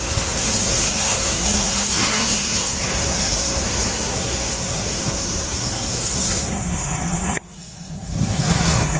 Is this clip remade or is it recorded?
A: remade